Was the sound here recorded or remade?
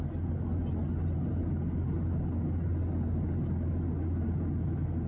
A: recorded